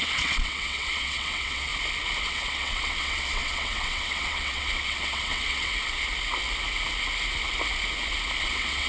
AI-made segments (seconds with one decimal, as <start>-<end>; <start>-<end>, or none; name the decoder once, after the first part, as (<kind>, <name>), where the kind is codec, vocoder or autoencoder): 0.0-1.7 (vocoder, WaveNeXt); 2.2-5.7; 8.4-8.9

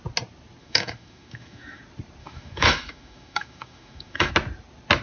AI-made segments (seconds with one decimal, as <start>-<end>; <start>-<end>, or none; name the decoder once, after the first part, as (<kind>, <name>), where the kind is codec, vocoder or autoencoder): 0.6-1.8 (autoencoder, DAC-VAE); 2.2-4.3

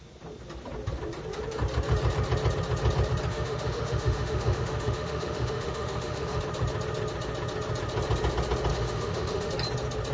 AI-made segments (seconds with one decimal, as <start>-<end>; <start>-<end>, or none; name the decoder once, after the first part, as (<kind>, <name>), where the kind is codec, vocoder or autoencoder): 3.3-6.4 (autoencoder, DAC-VAE); 8.7-9.5